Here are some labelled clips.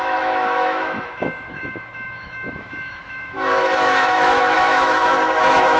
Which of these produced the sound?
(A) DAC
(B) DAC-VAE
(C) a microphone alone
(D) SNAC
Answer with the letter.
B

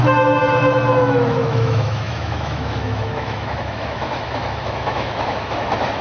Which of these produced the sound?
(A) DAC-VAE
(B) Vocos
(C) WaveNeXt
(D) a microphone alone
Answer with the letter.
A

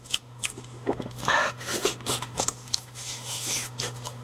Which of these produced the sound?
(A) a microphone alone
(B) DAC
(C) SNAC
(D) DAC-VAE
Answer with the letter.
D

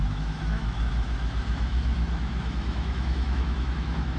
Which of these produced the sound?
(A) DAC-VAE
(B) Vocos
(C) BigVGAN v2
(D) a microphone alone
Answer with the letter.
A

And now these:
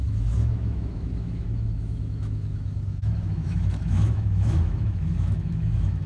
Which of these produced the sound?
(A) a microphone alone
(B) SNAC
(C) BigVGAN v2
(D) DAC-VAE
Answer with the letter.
D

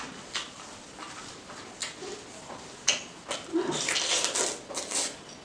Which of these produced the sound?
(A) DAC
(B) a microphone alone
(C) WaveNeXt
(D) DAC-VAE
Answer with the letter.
B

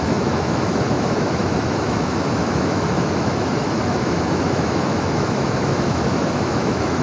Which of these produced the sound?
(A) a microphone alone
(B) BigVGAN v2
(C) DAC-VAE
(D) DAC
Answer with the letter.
C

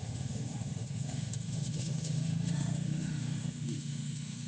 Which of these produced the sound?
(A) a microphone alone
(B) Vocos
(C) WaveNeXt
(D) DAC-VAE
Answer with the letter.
D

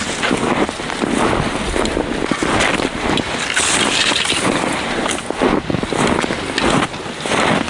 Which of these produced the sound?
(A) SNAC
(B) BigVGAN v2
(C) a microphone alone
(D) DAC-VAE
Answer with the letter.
C